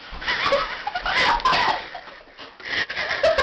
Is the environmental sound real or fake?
real